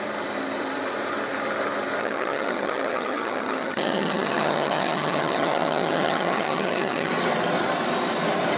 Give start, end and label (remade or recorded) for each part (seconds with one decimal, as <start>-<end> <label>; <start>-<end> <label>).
0.0-2.0 recorded; 2.0-7.1 remade; 7.1-8.6 recorded